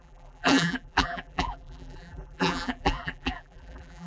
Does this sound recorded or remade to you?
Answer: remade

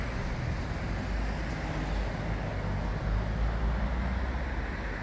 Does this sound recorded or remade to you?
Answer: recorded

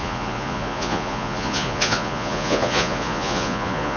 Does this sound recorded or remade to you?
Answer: remade